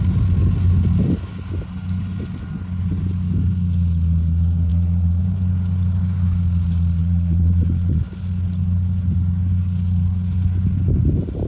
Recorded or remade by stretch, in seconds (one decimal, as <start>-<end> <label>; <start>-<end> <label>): 0.0-4.7 recorded; 4.7-5.2 remade; 5.2-7.0 recorded; 7.0-8.0 remade; 8.0-11.5 recorded